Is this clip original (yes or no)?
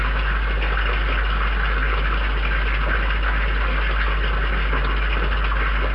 yes